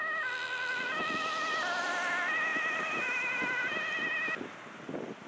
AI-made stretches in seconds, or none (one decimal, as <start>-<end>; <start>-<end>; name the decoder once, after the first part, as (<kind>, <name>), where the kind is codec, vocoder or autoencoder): none

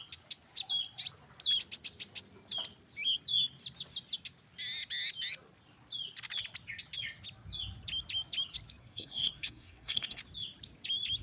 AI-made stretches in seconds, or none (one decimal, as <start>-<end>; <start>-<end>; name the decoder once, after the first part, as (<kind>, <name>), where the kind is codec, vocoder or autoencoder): 8.8-10.2 (codec, SNAC)

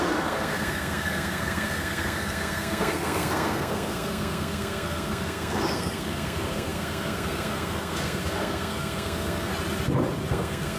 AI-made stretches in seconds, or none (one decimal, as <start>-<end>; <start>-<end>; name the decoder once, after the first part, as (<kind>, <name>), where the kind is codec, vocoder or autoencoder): 0.0-9.5 (codec, SNAC); 10.3-10.8

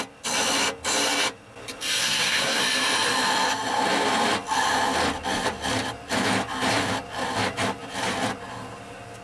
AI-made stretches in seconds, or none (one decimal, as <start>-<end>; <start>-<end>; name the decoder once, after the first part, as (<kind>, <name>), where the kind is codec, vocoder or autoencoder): 2.0-2.6 (codec, SNAC)

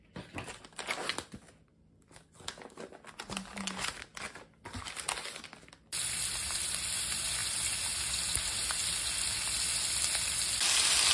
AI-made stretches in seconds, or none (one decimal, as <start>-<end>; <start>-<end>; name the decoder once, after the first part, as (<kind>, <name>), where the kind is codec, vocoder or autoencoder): none

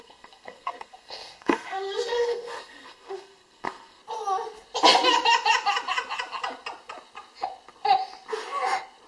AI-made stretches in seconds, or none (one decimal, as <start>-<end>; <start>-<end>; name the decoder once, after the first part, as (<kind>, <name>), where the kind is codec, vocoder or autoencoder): 0.0-4.0 (codec, SNAC)

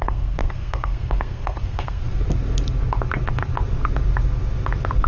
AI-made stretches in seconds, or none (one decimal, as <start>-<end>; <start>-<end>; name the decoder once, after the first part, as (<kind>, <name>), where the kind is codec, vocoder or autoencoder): 0.0-2.0 (codec, SNAC)

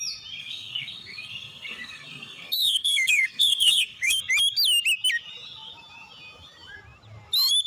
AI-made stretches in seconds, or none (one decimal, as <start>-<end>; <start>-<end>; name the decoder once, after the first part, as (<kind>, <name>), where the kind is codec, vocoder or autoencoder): 0.4-4.2 (codec, SNAC)